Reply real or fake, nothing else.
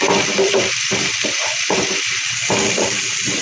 fake